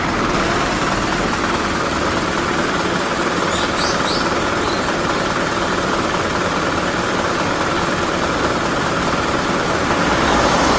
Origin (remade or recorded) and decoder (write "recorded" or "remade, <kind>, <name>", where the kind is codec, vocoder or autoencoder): remade, vocoder, BigVGAN v2